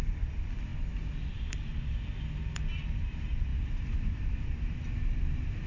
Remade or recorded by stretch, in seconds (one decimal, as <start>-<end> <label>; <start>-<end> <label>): 0.0-5.7 recorded